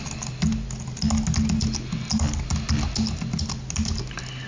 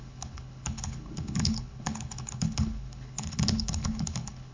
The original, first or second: first